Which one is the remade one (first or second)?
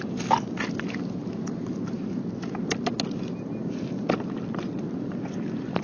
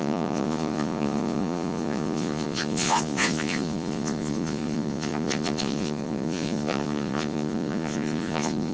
second